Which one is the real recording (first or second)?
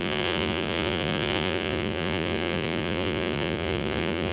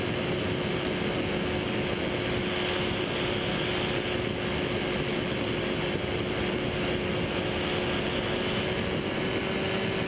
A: second